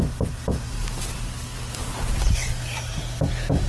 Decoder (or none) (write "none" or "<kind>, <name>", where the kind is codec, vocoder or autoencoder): none